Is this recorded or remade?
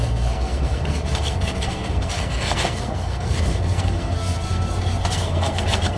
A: remade